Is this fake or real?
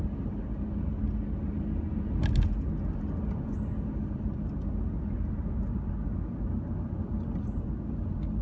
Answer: real